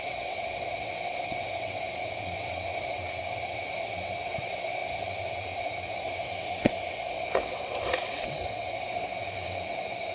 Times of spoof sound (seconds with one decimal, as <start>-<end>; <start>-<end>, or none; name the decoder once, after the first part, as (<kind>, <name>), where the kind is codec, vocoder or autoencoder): 0.0-10.1 (vocoder, WaveNeXt)